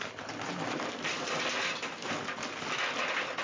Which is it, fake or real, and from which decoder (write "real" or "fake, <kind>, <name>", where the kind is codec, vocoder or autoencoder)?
real